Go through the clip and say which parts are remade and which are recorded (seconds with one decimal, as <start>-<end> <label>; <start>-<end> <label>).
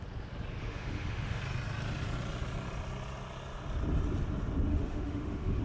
0.0-0.6 recorded; 0.6-1.4 remade; 1.4-4.7 recorded; 4.7-5.6 remade